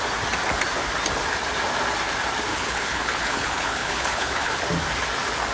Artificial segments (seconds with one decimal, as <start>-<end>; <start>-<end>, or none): 2.5-4.5